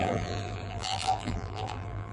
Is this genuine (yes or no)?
no